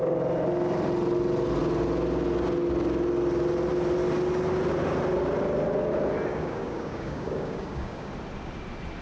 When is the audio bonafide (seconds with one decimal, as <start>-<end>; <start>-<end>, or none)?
0.0-6.3; 8.1-9.0